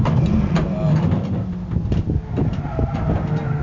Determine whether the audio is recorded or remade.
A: recorded